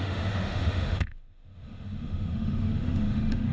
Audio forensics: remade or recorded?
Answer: remade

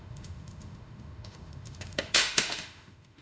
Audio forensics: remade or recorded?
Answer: remade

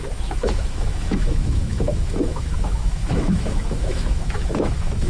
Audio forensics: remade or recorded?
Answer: remade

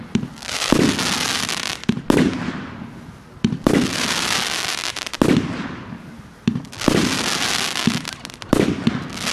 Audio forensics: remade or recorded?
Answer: recorded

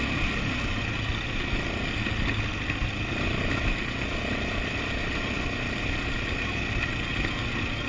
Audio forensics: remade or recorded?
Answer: recorded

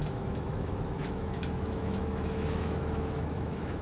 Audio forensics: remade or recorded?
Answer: remade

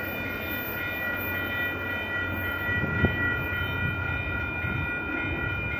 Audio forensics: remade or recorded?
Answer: recorded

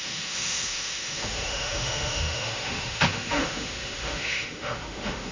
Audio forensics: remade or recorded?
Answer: remade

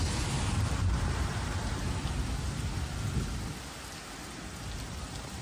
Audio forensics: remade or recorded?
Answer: recorded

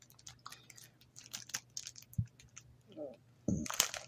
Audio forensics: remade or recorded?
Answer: recorded